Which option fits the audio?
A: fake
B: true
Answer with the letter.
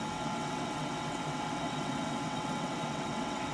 A